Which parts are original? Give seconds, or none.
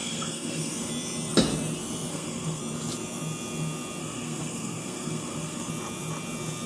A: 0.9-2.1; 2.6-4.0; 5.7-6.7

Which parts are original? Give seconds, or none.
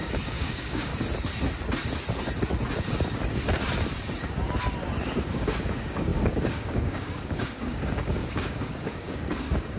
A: 0.9-5.0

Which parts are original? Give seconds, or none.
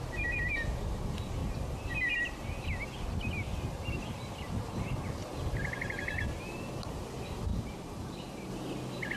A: 0.0-1.4; 1.9-5.2; 7.0-7.5; 8.5-9.2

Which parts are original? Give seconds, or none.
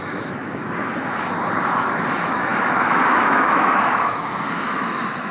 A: 0.6-1.6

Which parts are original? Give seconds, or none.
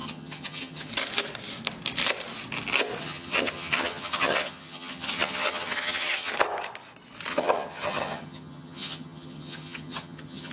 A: 0.9-3.0; 6.3-7.3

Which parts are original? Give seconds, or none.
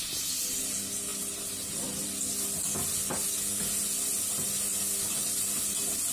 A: 0.0-6.1